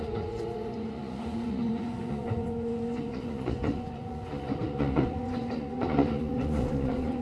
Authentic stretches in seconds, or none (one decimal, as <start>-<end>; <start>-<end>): none